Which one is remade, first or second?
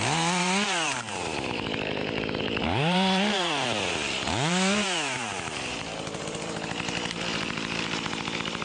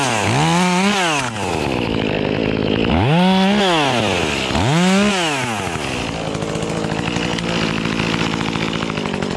first